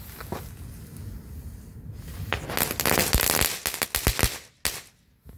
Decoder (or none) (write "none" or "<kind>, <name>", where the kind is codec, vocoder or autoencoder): none